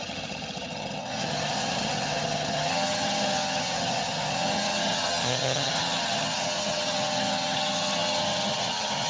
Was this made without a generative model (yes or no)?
no